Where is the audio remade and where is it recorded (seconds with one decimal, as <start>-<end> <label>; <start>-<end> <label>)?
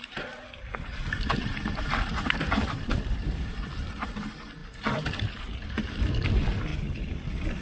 0.0-3.7 remade; 3.7-7.6 recorded